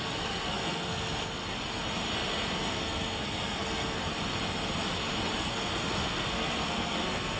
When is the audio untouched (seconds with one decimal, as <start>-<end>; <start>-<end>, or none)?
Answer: 1.4-2.7; 4.0-5.4